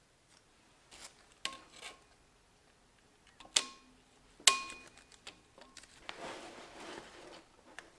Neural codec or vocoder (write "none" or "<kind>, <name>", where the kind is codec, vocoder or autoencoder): none